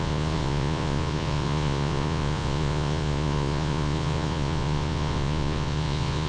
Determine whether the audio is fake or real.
fake